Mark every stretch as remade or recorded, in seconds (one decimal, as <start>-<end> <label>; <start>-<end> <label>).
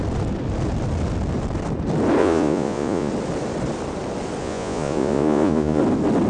0.0-2.2 recorded; 2.2-3.1 remade; 3.1-4.4 recorded; 4.4-5.8 remade; 5.8-6.3 recorded